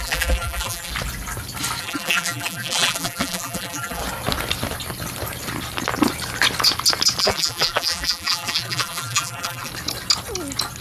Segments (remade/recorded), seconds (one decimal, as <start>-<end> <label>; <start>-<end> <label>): 0.0-0.9 remade; 0.9-1.8 recorded; 1.8-4.0 remade; 4.0-7.2 recorded; 7.2-9.7 remade; 9.7-10.8 recorded